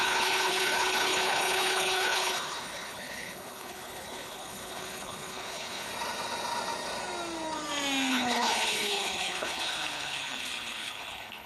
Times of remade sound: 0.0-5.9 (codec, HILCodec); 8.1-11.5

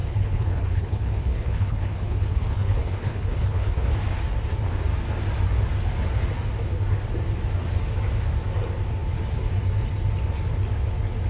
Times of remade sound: 0.0-3.9 (codec, HILCodec)